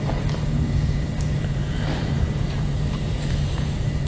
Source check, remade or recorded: remade